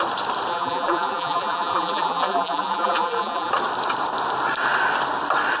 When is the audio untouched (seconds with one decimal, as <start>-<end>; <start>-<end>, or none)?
0.0-0.5; 3.5-5.6